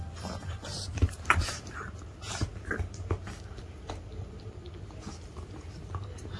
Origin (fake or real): real